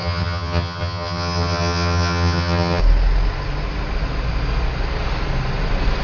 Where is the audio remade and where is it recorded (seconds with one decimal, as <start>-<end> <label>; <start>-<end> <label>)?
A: 0.0-2.8 remade; 2.8-6.0 recorded